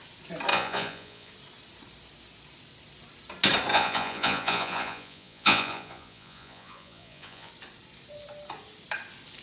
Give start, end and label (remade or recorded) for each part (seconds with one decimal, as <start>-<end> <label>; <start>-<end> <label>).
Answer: 0.0-0.5 recorded; 0.5-1.3 remade; 1.3-3.7 recorded; 3.7-7.5 remade; 7.5-9.4 recorded